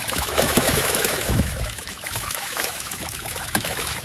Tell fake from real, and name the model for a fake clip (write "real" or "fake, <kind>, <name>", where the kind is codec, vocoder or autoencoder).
fake, autoencoder, DAC-VAE